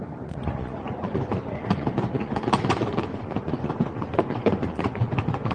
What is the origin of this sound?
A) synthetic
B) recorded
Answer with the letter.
A